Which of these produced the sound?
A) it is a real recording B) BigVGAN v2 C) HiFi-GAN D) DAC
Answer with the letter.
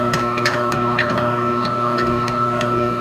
D